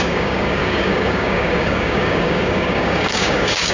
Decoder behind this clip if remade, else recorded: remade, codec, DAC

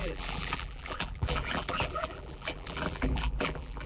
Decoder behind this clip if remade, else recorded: remade, vocoder, BigVGAN v2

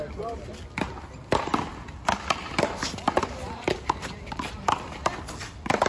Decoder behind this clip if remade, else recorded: recorded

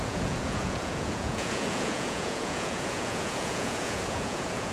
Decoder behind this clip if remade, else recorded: remade, vocoder, Vocos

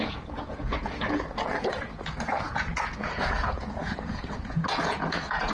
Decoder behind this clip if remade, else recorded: remade, vocoder, Vocos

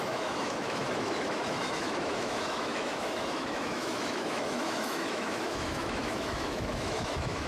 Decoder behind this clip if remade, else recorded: remade, autoencoder, DAC-VAE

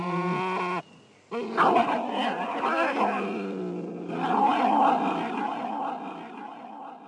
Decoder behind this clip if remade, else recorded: recorded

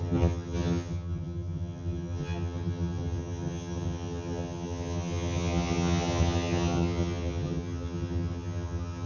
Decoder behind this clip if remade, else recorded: remade, vocoder, HiFi-GAN